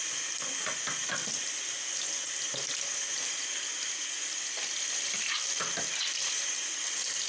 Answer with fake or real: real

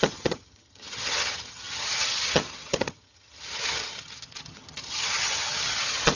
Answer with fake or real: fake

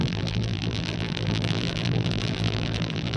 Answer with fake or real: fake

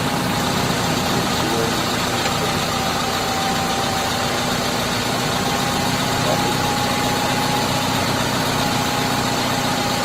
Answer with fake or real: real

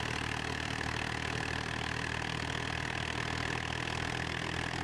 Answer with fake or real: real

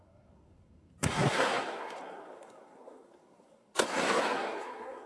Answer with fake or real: fake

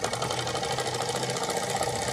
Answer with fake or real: real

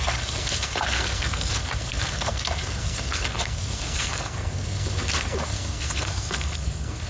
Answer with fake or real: fake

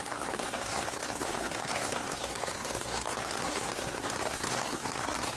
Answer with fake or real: fake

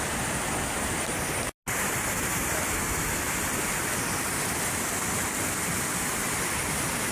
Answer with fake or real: real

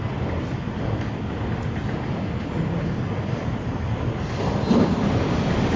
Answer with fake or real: fake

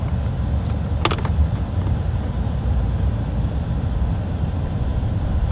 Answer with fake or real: real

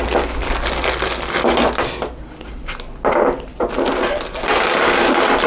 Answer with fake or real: real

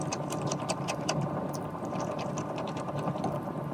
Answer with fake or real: fake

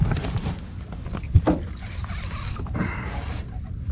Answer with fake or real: real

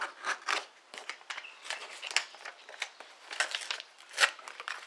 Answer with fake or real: real